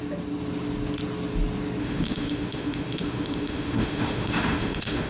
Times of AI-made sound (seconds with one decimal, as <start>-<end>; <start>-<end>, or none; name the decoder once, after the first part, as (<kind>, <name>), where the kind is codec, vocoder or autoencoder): 1.8-5.1 (autoencoder, DAC-VAE)

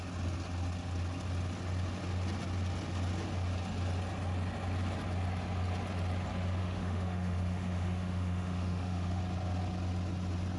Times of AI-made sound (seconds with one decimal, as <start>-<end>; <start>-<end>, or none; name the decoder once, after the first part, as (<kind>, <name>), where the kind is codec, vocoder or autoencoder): 6.6-9.2 (autoencoder, DAC-VAE)

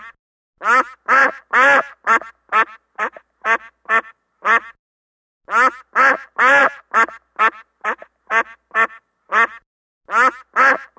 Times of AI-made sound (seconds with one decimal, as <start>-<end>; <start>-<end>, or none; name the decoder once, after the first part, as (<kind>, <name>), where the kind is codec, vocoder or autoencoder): none

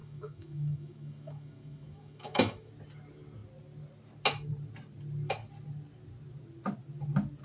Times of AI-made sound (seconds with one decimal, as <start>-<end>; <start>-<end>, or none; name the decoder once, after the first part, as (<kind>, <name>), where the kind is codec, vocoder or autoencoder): 0.0-2.7 (autoencoder, DAC-VAE)

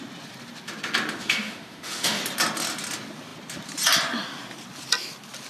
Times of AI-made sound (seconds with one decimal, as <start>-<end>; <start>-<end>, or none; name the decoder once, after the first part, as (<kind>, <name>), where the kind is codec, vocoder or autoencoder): 1.2-2.2 (autoencoder, DAC-VAE)